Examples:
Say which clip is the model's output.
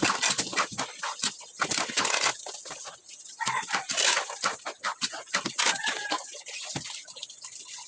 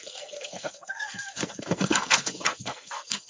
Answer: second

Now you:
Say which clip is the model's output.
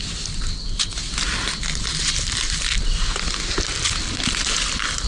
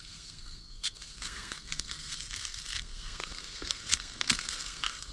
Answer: second